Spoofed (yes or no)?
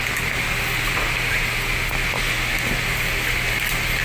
no